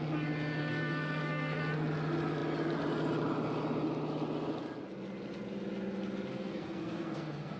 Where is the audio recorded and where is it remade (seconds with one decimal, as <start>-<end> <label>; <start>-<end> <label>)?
0.0-0.6 recorded; 0.6-1.6 remade; 1.6-6.3 recorded; 6.3-7.6 remade